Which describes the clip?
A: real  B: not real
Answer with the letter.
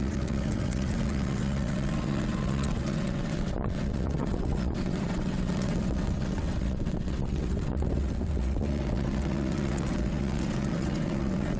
B